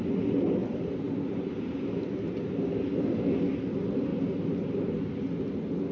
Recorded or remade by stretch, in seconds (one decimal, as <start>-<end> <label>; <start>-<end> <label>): 0.0-0.6 recorded; 0.6-2.9 remade; 2.9-4.1 recorded; 4.1-4.9 remade; 4.9-5.9 recorded